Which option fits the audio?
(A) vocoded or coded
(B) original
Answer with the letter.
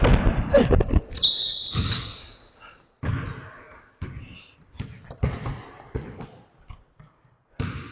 B